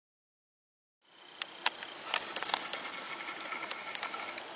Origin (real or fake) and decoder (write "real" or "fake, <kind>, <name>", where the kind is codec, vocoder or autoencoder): real